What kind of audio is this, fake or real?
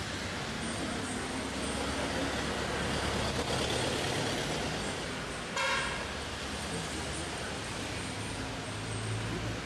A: real